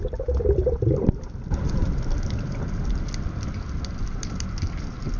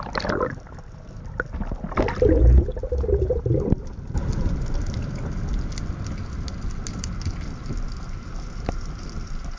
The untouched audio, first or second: second